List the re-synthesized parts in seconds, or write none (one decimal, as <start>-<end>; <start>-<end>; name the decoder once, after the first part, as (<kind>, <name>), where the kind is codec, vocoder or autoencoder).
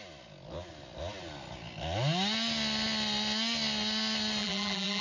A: 4.4-5.0 (vocoder, BigVGAN v2)